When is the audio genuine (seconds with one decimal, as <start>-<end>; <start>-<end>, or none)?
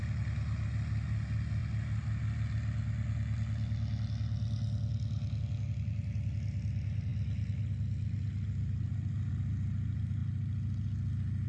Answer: 0.0-11.5